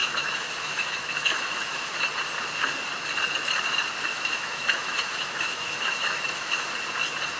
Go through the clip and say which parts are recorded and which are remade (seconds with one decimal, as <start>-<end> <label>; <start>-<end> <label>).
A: 0.0-1.9 remade; 1.9-4.1 recorded; 4.1-6.7 remade; 6.7-7.4 recorded